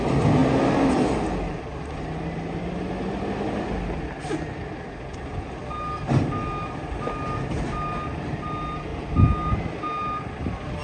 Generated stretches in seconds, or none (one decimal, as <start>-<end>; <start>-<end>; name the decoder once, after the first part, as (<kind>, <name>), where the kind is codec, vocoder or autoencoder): none

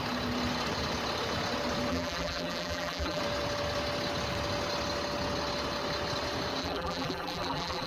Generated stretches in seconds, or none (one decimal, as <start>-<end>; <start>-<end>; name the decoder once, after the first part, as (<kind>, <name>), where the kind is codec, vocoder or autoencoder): 1.9-3.2 (vocoder, BigVGAN v2); 6.6-7.9

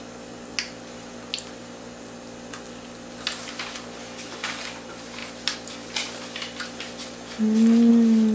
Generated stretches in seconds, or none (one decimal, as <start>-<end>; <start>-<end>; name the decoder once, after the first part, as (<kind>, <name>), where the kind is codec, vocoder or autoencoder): none

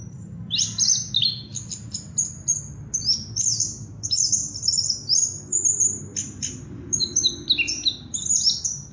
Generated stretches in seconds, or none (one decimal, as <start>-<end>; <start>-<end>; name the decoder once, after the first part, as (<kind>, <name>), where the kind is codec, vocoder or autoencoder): none

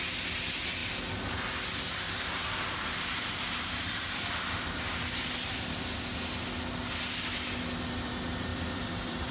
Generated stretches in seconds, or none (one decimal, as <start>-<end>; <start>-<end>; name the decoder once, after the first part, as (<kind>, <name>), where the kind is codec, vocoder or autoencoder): 8.5-9.3 (vocoder, BigVGAN v2)

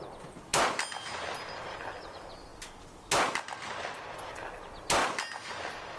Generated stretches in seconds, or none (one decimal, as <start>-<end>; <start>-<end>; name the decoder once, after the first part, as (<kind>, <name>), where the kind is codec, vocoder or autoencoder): none

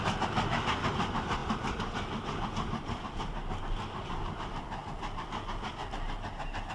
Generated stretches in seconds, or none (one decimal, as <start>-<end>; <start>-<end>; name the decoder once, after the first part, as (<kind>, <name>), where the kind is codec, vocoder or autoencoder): 1.4-3.6 (vocoder, BigVGAN v2)

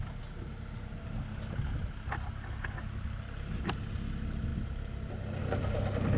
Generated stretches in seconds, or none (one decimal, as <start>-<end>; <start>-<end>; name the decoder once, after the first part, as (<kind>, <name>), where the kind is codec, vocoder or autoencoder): none